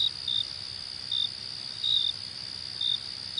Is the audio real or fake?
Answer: real